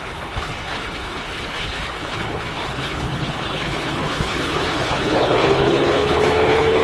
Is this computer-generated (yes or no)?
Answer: yes